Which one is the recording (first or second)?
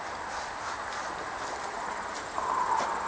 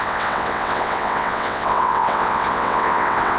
first